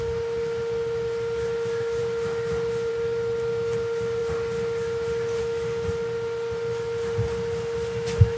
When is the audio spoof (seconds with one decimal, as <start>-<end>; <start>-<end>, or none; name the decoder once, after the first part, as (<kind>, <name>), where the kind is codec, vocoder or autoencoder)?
none